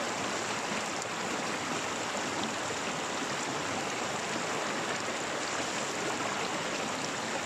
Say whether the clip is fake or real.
real